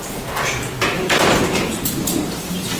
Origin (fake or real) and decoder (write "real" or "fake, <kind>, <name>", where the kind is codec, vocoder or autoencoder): real